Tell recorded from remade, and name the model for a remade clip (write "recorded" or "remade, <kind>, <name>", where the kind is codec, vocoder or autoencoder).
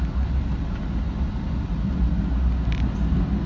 recorded